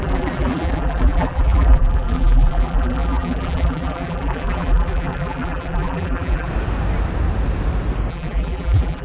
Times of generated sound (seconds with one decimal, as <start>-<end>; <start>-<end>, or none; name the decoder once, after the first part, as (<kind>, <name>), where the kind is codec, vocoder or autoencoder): 0.0-6.5 (vocoder, BigVGAN v2); 8.1-9.0